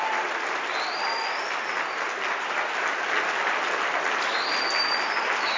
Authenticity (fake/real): real